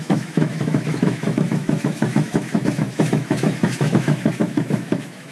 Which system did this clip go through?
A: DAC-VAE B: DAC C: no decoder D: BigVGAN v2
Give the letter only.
A